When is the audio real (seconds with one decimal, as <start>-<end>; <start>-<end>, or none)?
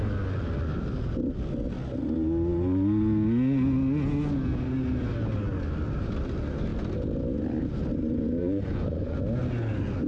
0.0-8.4; 9.2-10.1